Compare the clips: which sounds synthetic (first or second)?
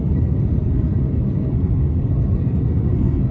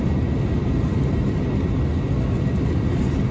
first